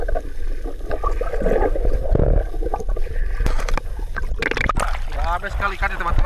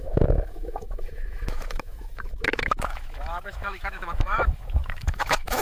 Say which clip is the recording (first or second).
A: first